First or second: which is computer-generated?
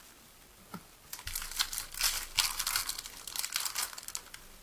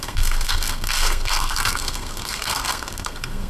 second